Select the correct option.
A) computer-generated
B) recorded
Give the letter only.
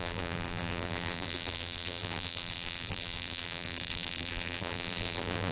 A